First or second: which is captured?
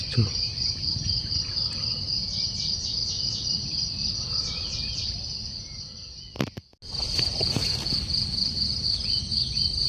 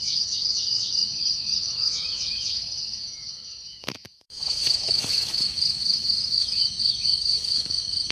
first